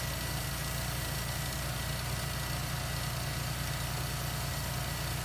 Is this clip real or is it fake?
real